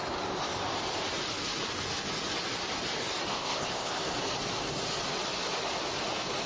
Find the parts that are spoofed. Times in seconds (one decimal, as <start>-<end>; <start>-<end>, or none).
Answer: 3.3-3.9